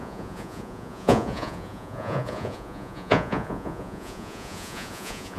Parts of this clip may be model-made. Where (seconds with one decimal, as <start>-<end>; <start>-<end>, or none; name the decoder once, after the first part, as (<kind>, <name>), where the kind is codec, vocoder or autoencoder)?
0.0-5.4 (vocoder, Vocos)